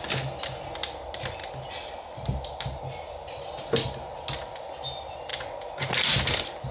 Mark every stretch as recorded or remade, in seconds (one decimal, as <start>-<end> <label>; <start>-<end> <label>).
0.0-6.7 recorded